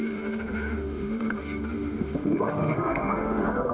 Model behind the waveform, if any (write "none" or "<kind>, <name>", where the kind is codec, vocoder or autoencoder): autoencoder, DAC-VAE